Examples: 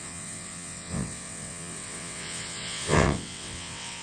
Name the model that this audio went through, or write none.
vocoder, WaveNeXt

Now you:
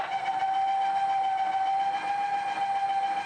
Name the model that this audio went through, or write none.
none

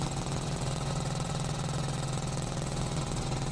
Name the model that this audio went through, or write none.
vocoder, WaveNeXt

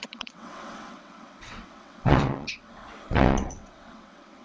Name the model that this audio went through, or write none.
vocoder, WaveNeXt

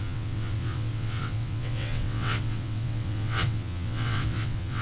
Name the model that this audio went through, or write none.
vocoder, WaveNeXt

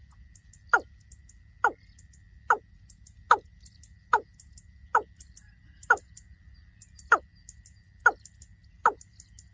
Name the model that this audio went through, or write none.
none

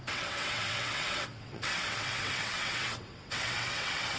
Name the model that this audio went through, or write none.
vocoder, WaveNeXt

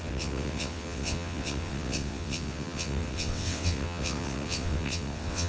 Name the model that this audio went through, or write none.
vocoder, WaveNeXt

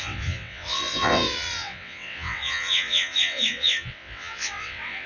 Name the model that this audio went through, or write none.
vocoder, WaveNeXt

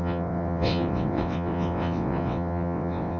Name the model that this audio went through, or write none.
vocoder, WaveNeXt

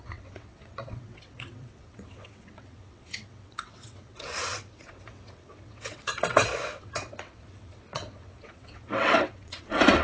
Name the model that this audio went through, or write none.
vocoder, WaveNeXt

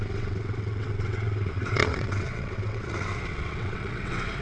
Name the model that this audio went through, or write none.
vocoder, WaveNeXt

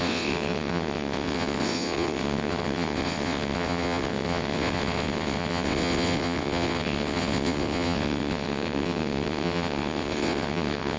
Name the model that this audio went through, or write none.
vocoder, WaveNeXt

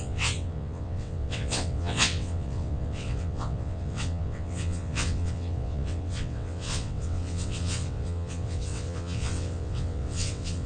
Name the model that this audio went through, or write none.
vocoder, WaveNeXt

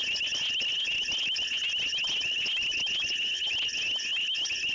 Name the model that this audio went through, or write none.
none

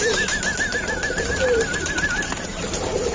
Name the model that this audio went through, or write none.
none